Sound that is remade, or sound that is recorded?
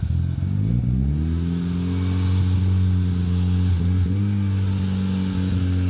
recorded